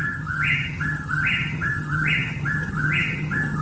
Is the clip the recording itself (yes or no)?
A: no